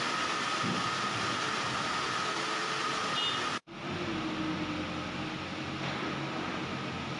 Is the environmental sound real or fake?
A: real